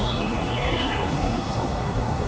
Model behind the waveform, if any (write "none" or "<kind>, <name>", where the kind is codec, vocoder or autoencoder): codec, SNAC